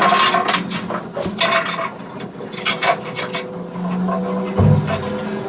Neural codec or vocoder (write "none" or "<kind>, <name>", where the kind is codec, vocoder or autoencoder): none